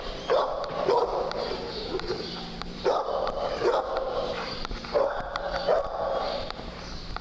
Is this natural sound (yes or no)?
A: no